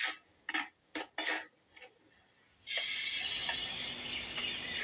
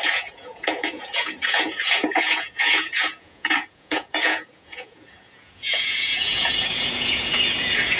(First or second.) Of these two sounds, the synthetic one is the second